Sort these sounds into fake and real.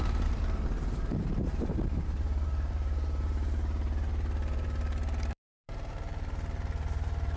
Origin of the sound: fake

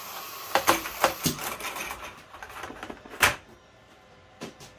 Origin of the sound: fake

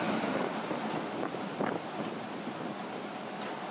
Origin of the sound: real